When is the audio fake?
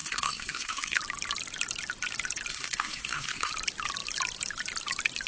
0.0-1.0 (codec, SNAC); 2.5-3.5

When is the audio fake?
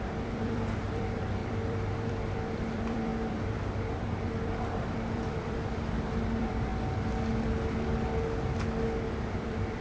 0.0-6.7 (vocoder, BigVGAN v2); 9.3-9.8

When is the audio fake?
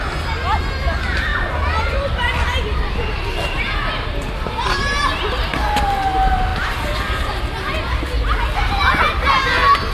none